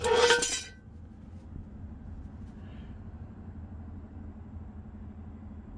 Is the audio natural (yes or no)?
yes